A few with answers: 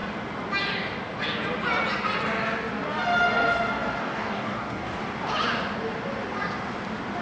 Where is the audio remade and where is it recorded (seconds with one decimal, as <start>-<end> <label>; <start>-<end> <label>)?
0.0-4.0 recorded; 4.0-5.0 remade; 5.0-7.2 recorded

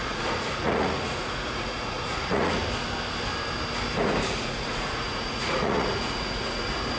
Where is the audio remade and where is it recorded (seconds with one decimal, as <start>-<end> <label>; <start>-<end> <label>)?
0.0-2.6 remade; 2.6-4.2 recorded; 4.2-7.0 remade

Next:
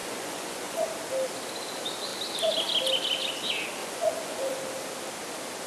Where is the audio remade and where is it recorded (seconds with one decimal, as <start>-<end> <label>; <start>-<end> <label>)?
0.0-0.9 remade; 0.9-3.8 recorded; 3.8-4.6 remade; 4.6-5.7 recorded

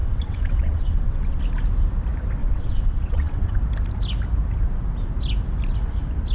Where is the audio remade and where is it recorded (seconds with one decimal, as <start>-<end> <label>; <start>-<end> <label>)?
0.0-1.4 remade; 1.4-2.4 recorded; 2.4-3.6 remade; 3.6-6.3 recorded

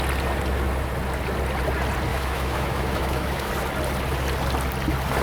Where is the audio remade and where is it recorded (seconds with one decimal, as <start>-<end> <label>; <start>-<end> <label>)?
0.0-2.1 recorded; 2.1-3.5 remade; 3.5-5.2 recorded

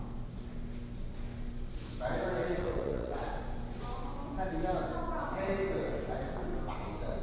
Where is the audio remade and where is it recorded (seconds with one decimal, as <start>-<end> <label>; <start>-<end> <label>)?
0.0-2.4 recorded; 2.4-3.4 remade; 3.4-7.2 recorded